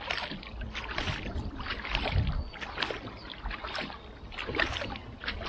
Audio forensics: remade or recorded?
recorded